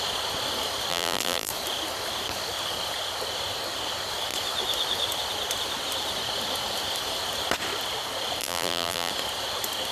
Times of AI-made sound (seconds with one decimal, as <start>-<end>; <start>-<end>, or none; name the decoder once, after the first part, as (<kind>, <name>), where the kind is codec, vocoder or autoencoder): 0.9-1.5 (vocoder, BigVGAN v2); 8.4-9.1